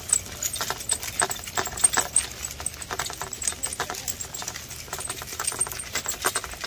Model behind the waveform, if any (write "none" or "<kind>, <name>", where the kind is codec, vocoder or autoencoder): none